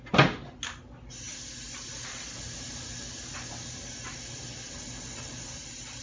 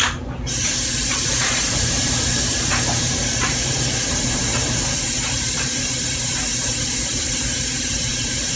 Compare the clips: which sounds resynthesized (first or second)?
second